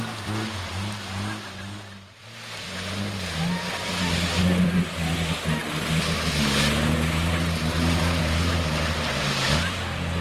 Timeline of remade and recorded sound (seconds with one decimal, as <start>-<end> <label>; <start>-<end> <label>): 0.0-10.2 recorded